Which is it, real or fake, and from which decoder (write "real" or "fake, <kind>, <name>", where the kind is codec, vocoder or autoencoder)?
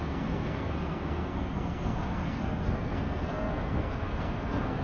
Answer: fake, codec, SNAC